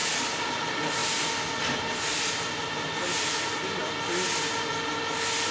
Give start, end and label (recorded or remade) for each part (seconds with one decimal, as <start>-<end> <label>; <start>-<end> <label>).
0.0-5.5 recorded